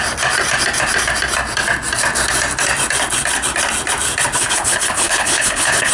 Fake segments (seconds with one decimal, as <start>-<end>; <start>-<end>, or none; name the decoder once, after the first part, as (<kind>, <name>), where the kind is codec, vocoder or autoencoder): 4.4-5.9 (codec, HILCodec)